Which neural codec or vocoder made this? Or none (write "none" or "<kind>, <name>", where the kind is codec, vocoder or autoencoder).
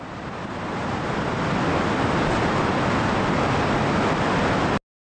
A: none